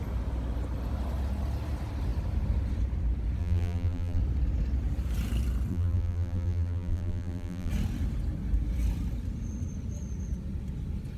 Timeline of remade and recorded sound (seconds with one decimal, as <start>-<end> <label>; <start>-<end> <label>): 0.0-3.4 recorded; 3.4-4.2 remade; 4.2-5.7 recorded; 5.7-7.7 remade; 7.7-11.2 recorded